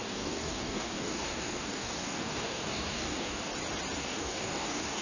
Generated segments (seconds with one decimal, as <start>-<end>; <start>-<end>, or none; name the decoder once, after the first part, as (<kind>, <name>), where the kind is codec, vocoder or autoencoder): 0.0-3.5 (codec, DAC); 4.0-5.0